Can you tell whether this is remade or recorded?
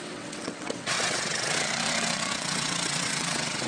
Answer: remade